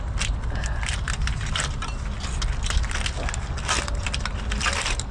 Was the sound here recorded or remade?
recorded